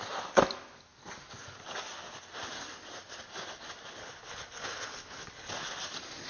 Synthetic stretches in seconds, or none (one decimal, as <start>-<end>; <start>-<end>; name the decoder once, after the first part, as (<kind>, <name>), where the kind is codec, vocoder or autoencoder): 4.0-5.5 (codec, HILCodec)